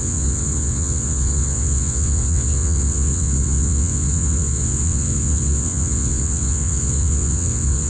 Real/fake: fake